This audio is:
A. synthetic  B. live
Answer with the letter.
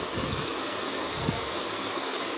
A